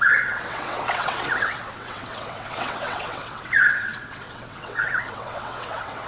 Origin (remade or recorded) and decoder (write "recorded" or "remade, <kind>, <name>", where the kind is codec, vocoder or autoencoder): remade, vocoder, WaveNeXt